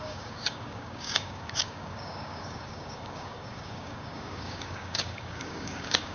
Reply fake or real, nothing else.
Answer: fake